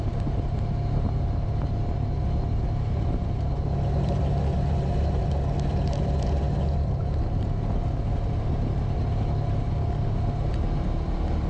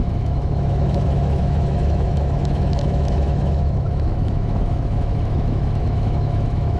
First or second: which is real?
first